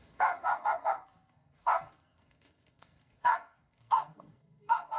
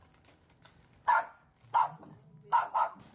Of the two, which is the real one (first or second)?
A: second